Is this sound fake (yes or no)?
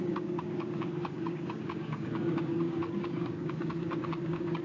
yes